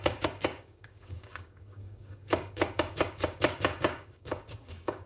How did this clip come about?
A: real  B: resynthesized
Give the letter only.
B